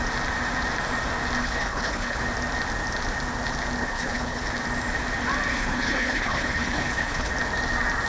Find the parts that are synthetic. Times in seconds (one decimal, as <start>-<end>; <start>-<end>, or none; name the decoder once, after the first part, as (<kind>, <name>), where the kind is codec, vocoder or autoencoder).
1.4-2.2 (codec, HILCodec); 3.8-4.4; 5.5-7.3